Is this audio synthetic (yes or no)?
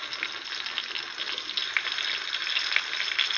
no